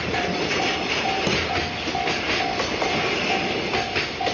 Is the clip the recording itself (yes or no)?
yes